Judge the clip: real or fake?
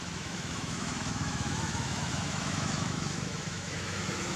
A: fake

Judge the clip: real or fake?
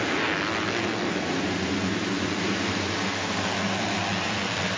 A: real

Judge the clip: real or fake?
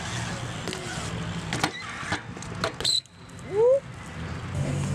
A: real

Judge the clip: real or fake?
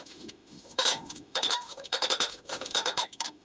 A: fake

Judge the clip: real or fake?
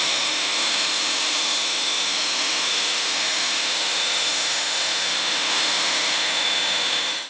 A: fake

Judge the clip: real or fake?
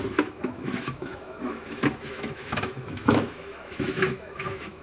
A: fake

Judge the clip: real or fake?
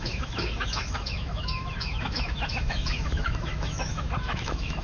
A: fake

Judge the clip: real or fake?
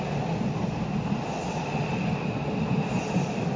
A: real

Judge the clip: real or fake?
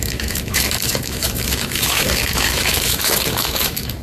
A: fake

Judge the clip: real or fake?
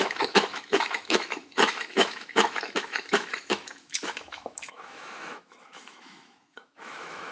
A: fake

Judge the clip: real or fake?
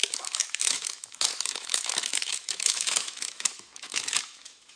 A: fake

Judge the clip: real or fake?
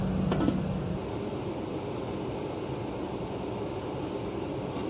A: real